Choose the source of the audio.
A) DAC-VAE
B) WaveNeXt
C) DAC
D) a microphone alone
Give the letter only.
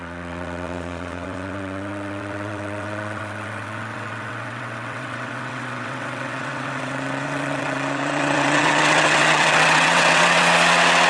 B